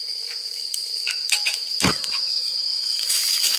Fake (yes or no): yes